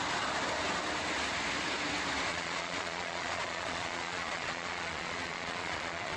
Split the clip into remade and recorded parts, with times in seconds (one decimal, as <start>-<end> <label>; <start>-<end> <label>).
0.0-2.3 recorded; 2.3-6.2 remade